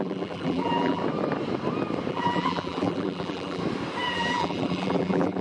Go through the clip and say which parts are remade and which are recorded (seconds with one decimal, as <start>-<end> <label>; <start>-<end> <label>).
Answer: 0.0-1.0 remade; 1.0-2.1 recorded; 2.1-3.6 remade; 3.6-4.1 recorded; 4.1-5.4 remade